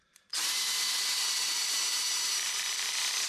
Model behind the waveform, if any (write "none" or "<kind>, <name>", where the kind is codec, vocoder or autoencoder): vocoder, BigVGAN v2